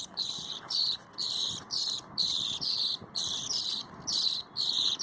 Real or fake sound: real